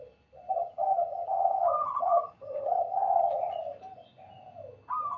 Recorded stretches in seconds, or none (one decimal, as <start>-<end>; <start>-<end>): 0.0-0.6; 3.6-5.2